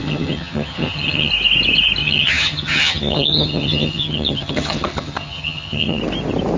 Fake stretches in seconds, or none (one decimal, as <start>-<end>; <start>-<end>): 0.0-1.3; 2.0-6.0